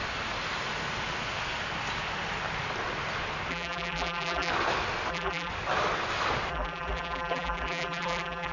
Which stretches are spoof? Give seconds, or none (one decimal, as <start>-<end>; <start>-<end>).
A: 3.5-4.5; 5.1-5.5; 6.5-8.5